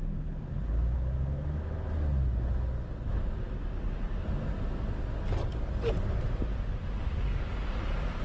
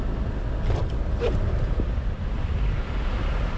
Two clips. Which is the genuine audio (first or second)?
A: first